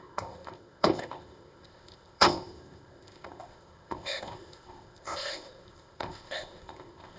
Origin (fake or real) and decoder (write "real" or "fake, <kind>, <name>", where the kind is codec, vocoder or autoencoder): fake, codec, ZipCodec